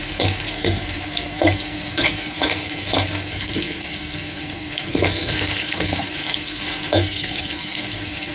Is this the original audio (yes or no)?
no